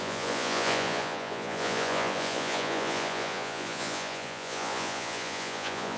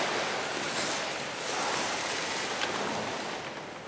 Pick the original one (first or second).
second